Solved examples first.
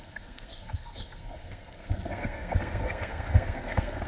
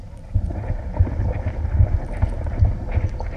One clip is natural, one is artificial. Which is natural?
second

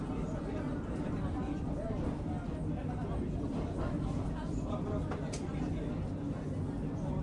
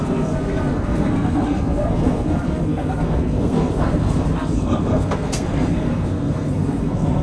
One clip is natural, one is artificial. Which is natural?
first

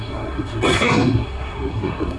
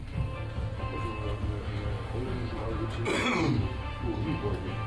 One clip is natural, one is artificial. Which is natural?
second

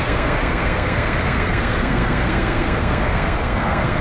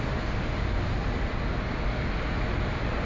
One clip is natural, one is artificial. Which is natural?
second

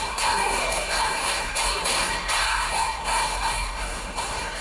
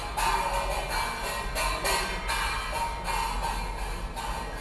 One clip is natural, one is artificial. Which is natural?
second